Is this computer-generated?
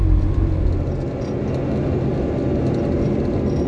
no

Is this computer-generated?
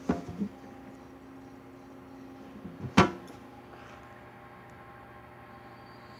no